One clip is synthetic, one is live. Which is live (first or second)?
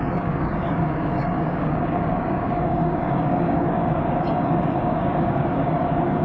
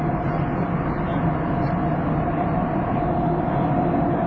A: second